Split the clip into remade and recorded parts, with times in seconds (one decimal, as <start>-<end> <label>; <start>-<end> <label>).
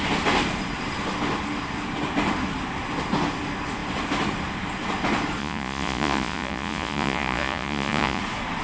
0.0-5.4 recorded; 5.4-8.2 remade; 8.2-8.6 recorded